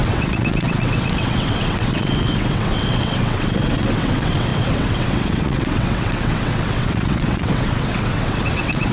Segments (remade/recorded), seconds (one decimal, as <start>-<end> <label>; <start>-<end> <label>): 0.0-8.9 remade